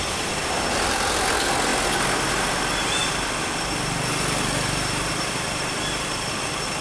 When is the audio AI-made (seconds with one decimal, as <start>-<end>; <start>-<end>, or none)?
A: none